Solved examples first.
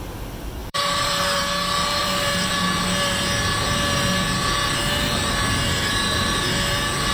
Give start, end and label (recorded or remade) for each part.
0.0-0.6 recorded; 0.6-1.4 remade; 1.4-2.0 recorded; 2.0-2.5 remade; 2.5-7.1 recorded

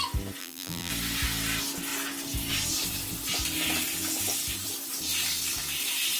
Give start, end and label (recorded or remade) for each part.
0.0-0.4 recorded; 0.4-0.9 remade; 0.9-6.2 recorded

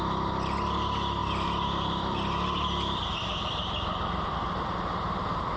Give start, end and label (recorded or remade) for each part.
0.0-1.2 recorded; 1.2-4.6 remade; 4.6-5.6 recorded

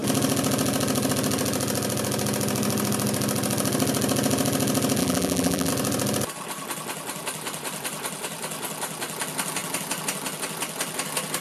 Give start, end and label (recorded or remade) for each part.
0.0-5.0 recorded; 5.0-5.7 remade; 5.7-11.4 recorded

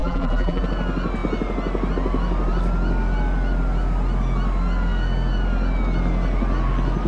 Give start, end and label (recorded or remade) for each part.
0.0-0.6 remade; 0.6-7.1 recorded

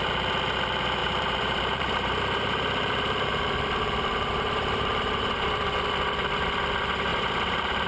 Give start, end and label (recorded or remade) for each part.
0.0-1.0 recorded; 1.0-5.5 remade; 5.5-7.1 recorded; 7.1-7.9 remade